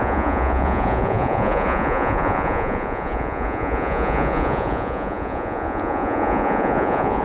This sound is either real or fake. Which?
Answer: fake